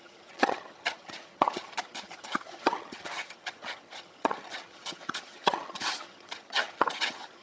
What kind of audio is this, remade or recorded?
remade